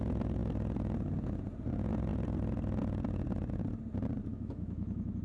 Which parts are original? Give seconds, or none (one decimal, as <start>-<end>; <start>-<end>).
0.0-4.3